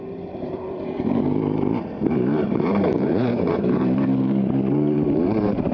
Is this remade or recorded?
remade